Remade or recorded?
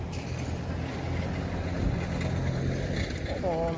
recorded